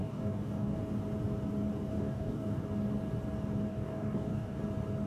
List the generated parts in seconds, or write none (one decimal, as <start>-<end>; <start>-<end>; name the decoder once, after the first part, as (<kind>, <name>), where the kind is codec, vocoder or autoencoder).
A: 0.0-0.8 (codec, DAC); 1.9-2.6; 3.7-4.6